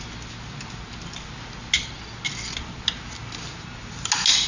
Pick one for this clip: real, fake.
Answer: real